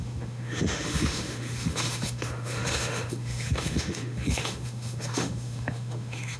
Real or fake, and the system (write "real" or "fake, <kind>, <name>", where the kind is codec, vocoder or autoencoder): fake, autoencoder, DAC-VAE